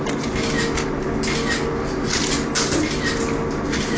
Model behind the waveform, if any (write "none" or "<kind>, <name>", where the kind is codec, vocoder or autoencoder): none